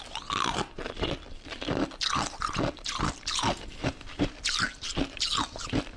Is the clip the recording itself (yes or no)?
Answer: yes